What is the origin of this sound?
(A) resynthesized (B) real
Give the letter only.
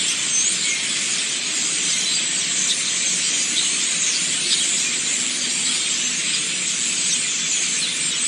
B